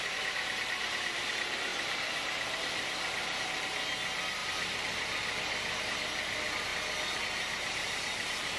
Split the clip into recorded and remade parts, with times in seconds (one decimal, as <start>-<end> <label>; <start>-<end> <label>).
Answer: 0.0-1.7 recorded; 1.7-3.4 remade; 3.4-4.4 recorded; 4.4-5.8 remade; 5.8-8.6 recorded